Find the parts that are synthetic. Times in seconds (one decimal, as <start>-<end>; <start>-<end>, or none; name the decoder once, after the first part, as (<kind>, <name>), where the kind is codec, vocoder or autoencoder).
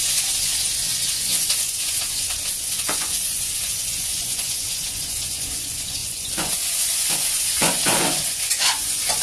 0.0-9.2 (vocoder, Vocos)